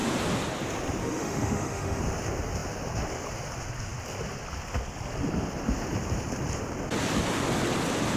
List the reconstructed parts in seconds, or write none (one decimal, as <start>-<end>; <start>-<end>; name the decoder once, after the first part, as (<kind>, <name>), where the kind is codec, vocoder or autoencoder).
1.0-2.0 (autoencoder, DAC-VAE)